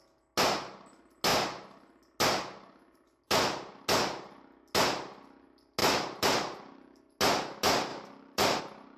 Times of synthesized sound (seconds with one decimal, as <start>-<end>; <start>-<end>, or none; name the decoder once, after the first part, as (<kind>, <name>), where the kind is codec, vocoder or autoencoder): 5.8-7.0 (vocoder, BigVGAN v2); 7.9-8.6